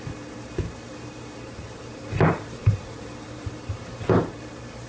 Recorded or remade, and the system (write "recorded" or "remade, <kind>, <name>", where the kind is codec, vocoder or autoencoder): remade, vocoder, BigVGAN v2